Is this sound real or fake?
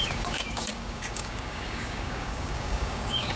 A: fake